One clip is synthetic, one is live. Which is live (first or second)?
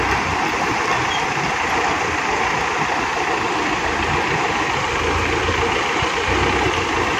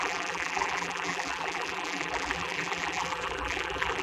first